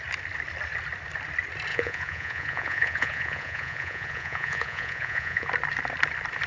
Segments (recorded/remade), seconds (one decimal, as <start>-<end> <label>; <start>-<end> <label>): 0.0-1.7 recorded; 1.7-5.5 remade; 5.5-6.5 recorded